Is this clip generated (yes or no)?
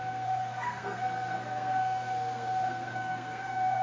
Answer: yes